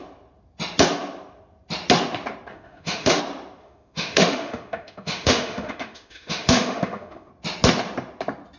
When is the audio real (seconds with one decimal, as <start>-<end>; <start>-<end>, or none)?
0.0-2.5; 3.2-3.6; 7.3-8.6